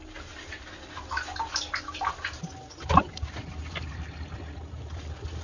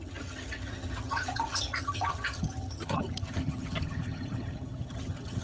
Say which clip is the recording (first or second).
first